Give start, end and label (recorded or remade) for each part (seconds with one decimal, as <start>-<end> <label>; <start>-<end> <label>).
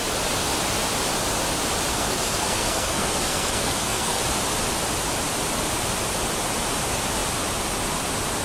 0.0-1.9 recorded; 1.9-4.2 remade; 4.2-8.4 recorded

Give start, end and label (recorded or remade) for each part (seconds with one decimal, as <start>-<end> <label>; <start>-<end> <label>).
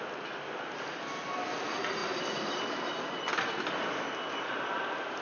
0.0-5.2 recorded